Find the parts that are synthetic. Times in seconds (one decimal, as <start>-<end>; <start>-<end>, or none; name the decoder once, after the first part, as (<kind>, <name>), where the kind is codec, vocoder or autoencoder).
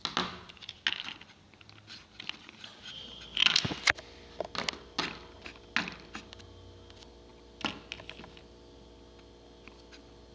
none